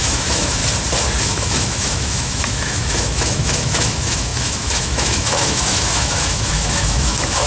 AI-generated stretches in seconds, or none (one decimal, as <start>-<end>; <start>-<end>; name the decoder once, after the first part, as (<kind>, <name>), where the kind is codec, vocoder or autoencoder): 0.0-0.6 (autoencoder, DAC-VAE); 1.2-7.5